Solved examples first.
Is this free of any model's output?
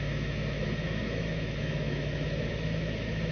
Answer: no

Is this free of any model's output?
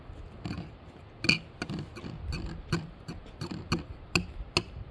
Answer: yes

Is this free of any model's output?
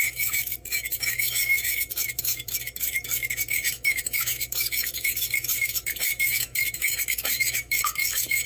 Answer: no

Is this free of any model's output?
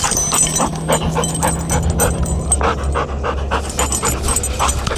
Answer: yes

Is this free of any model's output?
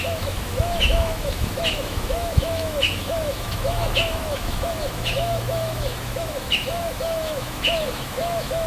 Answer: no